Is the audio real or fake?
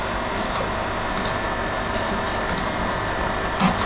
real